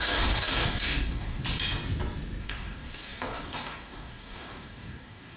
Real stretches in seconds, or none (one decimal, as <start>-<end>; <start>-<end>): 1.4-2.4

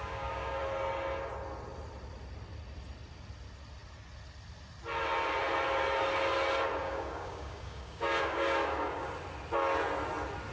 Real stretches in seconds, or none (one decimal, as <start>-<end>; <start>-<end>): 0.6-6.8; 9.1-10.5

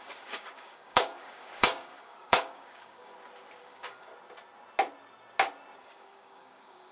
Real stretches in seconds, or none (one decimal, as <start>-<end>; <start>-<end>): 3.1-3.6; 4.1-5.8

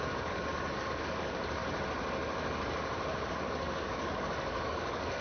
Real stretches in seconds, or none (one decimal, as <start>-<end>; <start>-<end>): 1.6-3.3

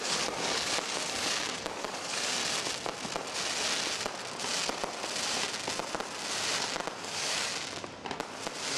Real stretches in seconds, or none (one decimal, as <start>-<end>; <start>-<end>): 2.4-7.0; 7.5-8.8

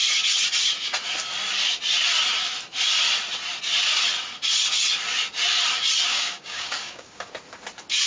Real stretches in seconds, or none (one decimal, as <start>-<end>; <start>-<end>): 0.0-6.1; 7.3-8.1